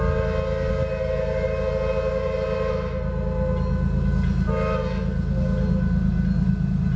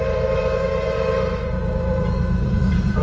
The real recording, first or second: first